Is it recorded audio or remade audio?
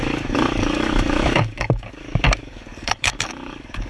remade